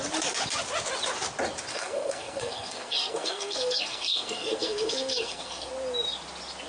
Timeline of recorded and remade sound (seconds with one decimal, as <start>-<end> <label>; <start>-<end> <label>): 0.0-1.7 recorded; 1.7-5.7 remade; 5.7-6.7 recorded

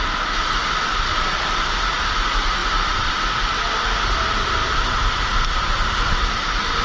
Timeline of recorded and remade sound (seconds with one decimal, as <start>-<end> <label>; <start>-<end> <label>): 0.0-0.9 recorded; 0.9-1.7 remade; 1.7-6.8 recorded

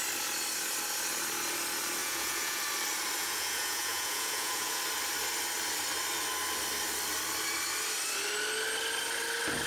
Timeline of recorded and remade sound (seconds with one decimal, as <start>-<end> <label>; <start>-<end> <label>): 0.0-2.0 recorded; 2.0-2.6 remade; 2.6-3.2 recorded; 3.2-4.8 remade; 4.8-9.7 recorded

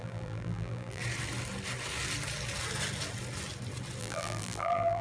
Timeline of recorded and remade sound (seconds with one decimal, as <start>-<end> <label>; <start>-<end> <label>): 0.0-1.0 remade; 1.0-4.0 recorded; 4.0-5.0 remade